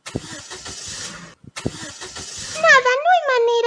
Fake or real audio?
real